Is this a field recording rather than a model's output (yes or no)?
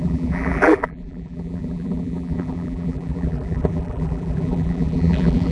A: no